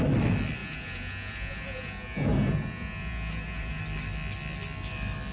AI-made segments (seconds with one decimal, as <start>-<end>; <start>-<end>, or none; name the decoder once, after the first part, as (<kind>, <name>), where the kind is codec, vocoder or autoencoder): 0.6-3.8 (vocoder, Vocos)